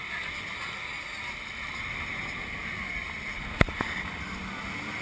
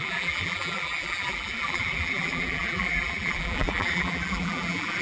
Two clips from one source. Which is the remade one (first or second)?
second